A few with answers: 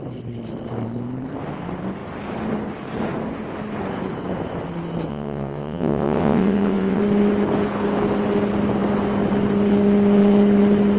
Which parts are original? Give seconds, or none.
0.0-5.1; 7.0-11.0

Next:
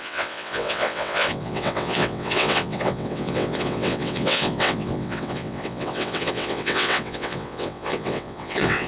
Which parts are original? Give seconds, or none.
none

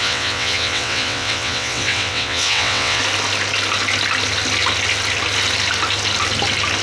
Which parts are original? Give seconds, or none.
3.0-6.8

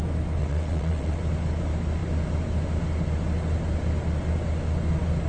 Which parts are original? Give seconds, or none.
0.0-0.4; 1.2-5.3